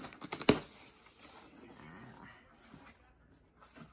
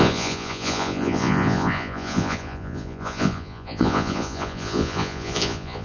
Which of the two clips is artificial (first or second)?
second